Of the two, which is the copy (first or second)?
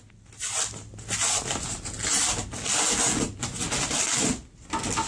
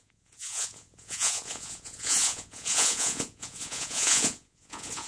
second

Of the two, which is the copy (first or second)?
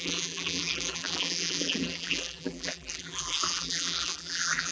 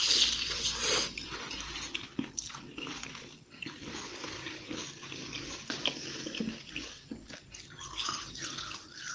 first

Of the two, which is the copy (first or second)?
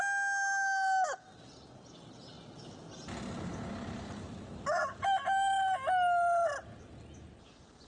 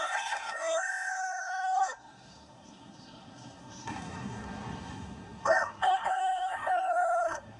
second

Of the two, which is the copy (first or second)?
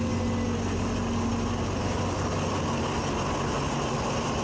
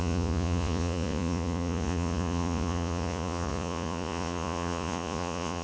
second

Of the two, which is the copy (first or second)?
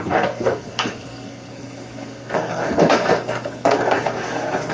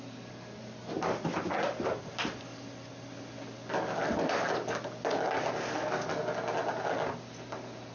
first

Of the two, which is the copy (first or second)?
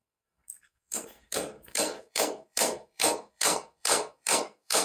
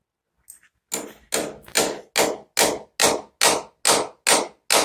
first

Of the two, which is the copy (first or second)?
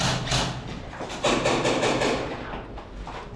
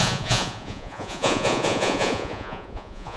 second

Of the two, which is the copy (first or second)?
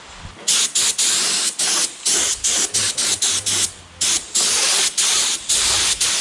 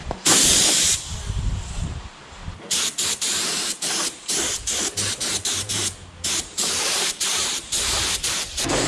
second